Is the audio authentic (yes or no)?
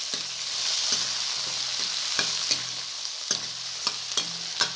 yes